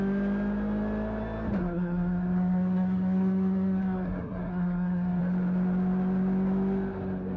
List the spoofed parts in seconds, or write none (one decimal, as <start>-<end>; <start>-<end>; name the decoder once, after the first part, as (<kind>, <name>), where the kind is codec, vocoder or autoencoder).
1.6-5.2 (codec, SNAC)